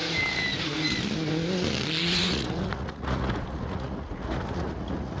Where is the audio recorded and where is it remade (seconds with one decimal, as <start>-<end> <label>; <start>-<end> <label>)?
0.0-2.0 recorded; 2.0-5.2 remade